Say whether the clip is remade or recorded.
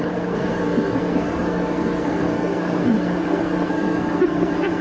remade